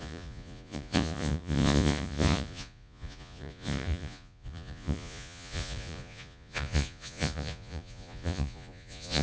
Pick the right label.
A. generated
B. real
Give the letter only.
A